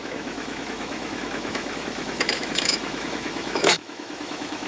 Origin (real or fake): fake